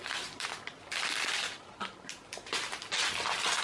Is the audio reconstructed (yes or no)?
no